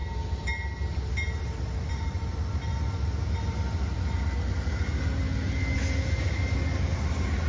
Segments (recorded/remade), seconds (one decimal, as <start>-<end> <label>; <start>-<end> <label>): 0.0-7.5 recorded